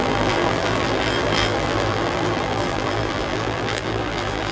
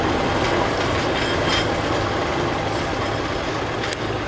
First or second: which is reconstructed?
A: first